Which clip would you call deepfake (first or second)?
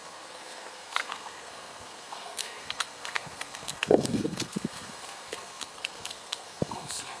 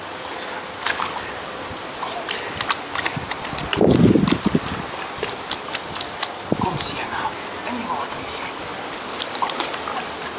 first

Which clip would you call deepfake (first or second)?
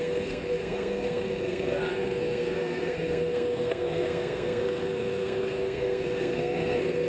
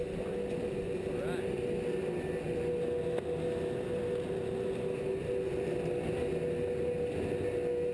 first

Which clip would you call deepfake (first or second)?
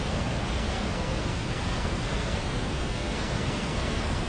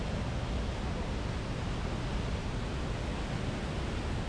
first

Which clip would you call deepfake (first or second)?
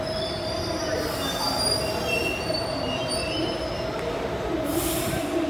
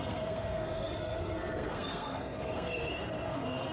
second